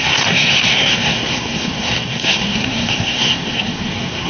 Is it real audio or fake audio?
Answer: fake